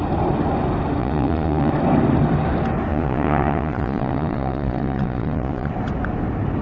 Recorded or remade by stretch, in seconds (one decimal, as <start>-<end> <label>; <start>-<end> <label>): 0.0-1.0 recorded; 1.0-1.7 remade; 1.7-2.9 recorded; 2.9-5.7 remade; 5.7-6.6 recorded